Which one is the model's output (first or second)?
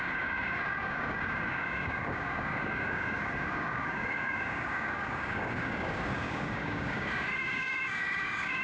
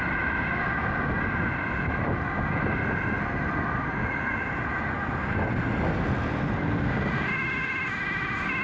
first